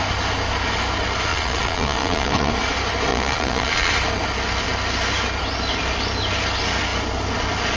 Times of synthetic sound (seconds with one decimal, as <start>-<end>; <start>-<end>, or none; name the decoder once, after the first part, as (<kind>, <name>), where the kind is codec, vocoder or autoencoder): 1.3-2.5 (vocoder, Vocos); 3.1-3.9